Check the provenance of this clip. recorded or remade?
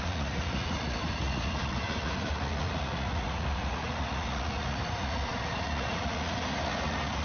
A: remade